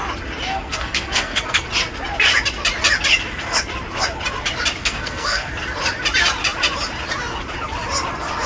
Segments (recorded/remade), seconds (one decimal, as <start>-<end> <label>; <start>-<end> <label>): 0.0-0.5 recorded; 0.5-1.7 remade; 1.7-4.8 recorded; 4.8-5.5 remade; 5.5-8.5 recorded